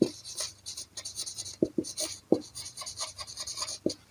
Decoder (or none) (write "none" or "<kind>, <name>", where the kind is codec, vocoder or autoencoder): none